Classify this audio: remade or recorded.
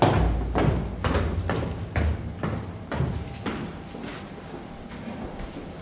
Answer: recorded